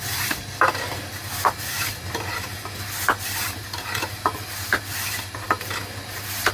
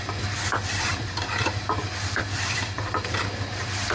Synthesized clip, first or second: second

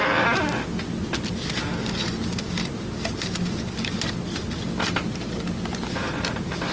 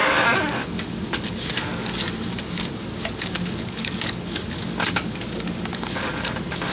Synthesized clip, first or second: second